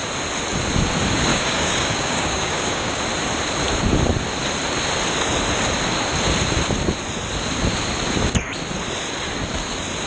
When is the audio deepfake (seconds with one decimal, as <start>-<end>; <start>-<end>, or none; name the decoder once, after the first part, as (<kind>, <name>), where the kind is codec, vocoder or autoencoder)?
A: 1.3-3.0 (codec, DAC)